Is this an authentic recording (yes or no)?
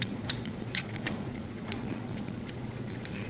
no